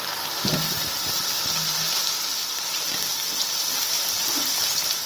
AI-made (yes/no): no